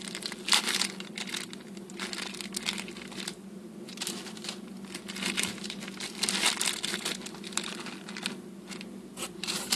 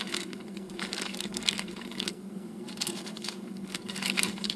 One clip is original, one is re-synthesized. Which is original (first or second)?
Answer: first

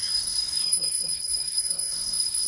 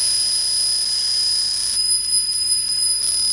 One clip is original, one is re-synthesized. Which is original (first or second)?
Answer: second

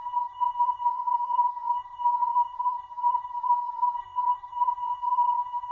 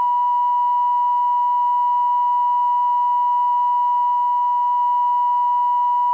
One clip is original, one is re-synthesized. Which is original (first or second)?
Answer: second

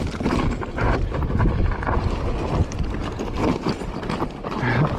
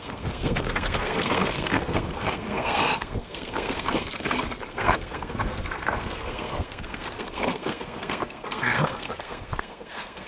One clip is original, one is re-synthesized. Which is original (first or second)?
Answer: first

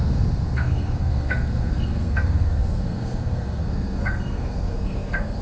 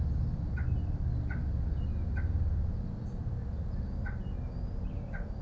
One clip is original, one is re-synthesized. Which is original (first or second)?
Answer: second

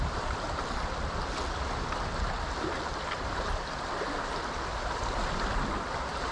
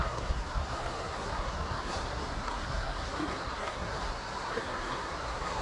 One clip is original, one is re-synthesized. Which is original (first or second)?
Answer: first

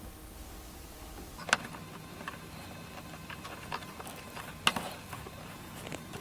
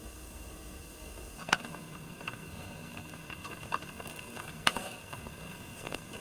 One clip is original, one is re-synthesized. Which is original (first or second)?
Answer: first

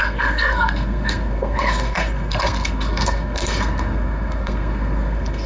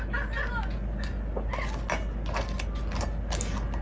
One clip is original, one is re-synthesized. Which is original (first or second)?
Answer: second